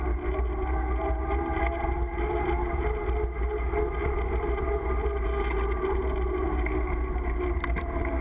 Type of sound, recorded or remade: recorded